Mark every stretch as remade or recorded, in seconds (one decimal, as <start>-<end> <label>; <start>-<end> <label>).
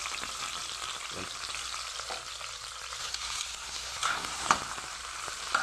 0.0-3.0 recorded; 3.0-4.5 remade; 4.5-5.6 recorded